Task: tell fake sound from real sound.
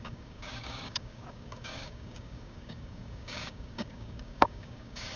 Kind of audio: fake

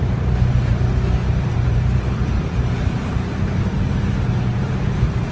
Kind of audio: fake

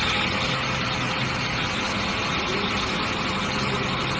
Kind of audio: real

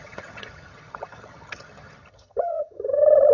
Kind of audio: fake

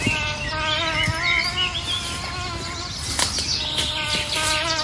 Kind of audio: real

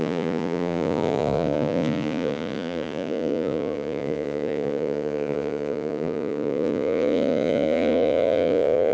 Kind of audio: fake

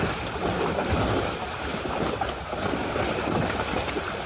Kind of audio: fake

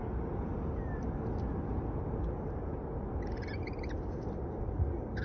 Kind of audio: real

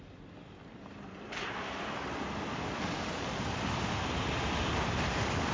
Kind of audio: real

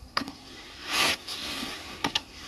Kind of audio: fake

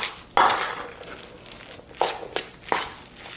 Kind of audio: real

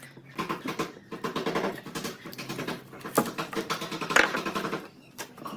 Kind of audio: real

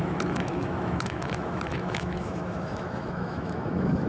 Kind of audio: fake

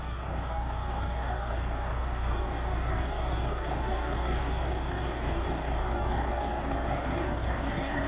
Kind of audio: fake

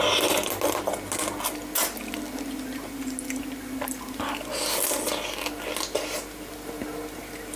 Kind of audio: real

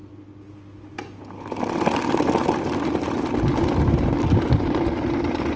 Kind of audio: real